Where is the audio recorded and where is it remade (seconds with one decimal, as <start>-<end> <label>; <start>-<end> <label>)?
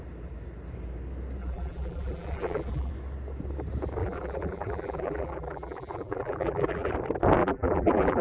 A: 0.0-1.4 recorded; 1.4-2.9 remade; 2.9-4.0 recorded; 4.0-6.9 remade; 6.9-7.4 recorded; 7.4-8.2 remade